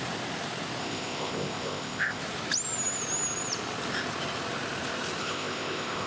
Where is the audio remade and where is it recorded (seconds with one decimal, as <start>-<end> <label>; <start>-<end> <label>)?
0.0-0.8 recorded; 0.8-2.2 remade; 2.2-5.2 recorded; 5.2-6.1 remade